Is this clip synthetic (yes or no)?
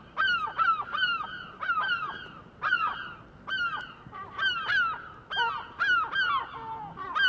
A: no